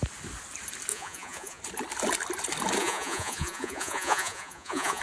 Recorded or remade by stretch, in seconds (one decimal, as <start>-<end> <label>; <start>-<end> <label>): 0.0-0.9 recorded; 0.9-1.6 remade; 1.6-2.8 recorded; 2.8-5.0 remade